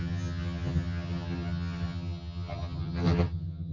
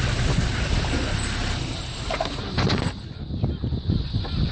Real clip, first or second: second